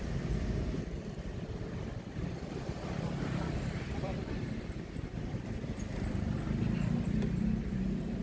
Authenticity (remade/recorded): remade